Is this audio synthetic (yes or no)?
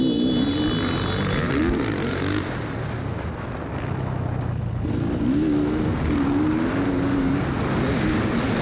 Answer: no